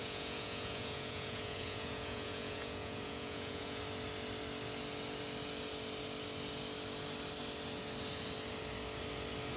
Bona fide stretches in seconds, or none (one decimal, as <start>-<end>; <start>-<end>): 3.8-9.6